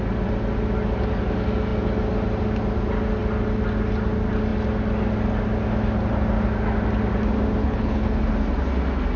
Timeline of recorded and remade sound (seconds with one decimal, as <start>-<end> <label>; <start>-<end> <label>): 0.0-7.6 recorded; 7.6-8.3 remade; 8.3-9.2 recorded